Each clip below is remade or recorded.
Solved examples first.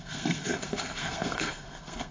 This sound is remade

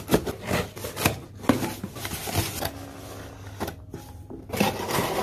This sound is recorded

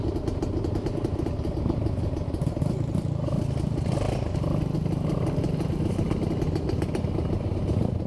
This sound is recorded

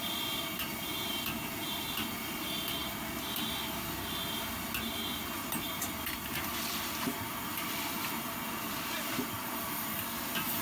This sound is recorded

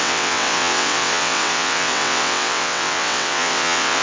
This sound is remade